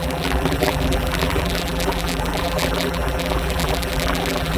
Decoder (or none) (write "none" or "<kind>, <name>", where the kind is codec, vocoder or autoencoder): vocoder, BigVGAN v2